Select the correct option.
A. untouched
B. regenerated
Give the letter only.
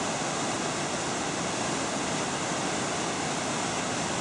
A